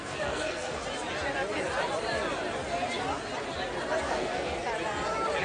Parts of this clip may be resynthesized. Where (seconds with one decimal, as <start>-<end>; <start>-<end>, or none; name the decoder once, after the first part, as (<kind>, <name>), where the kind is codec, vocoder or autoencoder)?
0.0-0.8 (codec, SNAC); 4.0-4.5